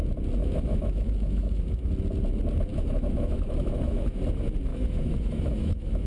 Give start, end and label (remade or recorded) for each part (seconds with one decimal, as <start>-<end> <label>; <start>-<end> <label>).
0.0-0.4 recorded; 0.4-1.9 remade; 1.9-2.7 recorded; 2.7-4.2 remade; 4.2-4.7 recorded; 4.7-6.1 remade

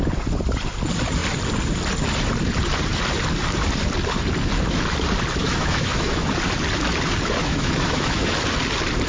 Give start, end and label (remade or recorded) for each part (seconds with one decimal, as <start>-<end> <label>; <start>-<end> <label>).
0.0-5.4 recorded; 5.4-6.3 remade; 6.3-7.4 recorded; 7.4-8.3 remade; 8.3-9.1 recorded

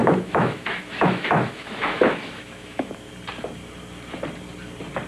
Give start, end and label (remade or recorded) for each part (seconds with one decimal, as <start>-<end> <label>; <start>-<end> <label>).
0.0-3.1 remade; 3.1-5.1 recorded

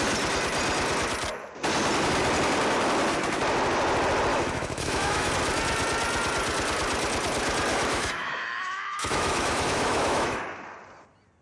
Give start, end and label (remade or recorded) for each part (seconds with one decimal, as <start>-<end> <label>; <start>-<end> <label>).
0.0-4.3 recorded; 4.3-5.3 remade; 5.3-7.7 recorded; 7.7-10.4 remade; 10.4-11.4 recorded

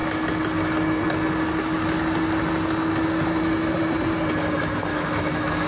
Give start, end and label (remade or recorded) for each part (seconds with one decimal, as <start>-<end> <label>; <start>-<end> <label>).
0.0-4.9 recorded; 4.9-5.7 remade

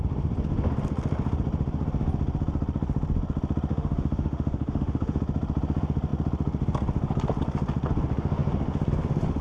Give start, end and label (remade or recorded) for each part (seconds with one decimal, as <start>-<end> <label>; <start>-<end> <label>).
0.0-3.7 recorded; 3.7-5.2 remade; 5.2-9.4 recorded

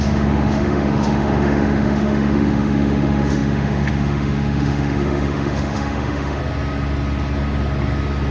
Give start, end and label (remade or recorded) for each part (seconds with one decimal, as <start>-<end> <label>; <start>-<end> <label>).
0.0-6.4 remade; 6.4-8.3 recorded